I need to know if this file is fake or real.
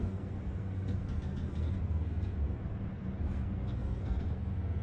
fake